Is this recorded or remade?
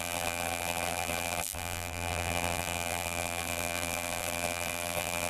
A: remade